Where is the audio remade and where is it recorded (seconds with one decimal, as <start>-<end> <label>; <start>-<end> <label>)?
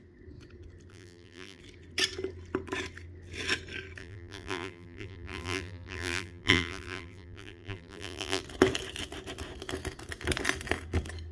0.0-0.9 recorded; 0.9-1.6 remade; 1.6-4.0 recorded; 4.0-8.4 remade; 8.4-11.3 recorded